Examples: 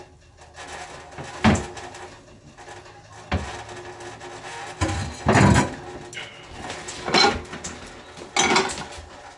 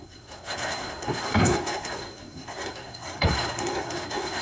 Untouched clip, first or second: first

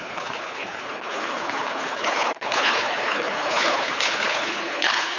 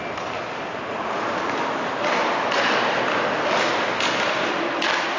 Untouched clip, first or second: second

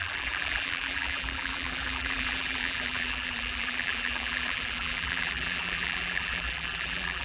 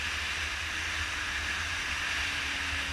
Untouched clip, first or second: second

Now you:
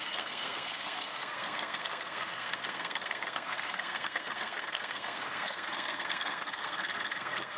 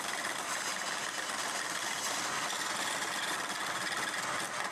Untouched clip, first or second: second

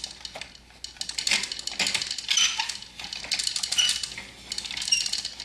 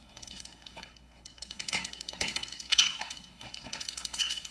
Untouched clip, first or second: first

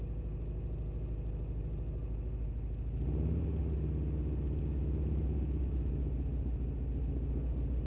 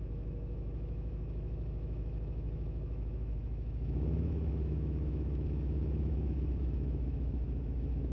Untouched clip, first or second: first